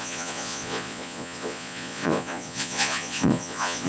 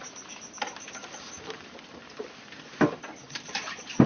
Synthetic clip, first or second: first